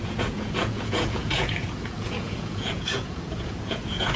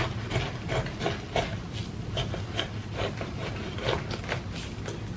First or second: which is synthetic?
first